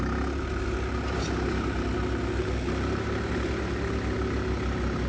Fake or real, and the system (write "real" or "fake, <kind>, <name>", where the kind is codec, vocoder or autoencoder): real